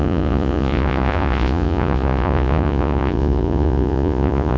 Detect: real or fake fake